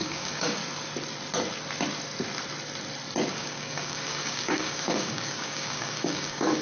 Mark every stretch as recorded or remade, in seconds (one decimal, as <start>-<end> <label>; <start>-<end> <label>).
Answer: 0.0-0.6 remade; 0.6-3.3 recorded; 3.3-6.6 remade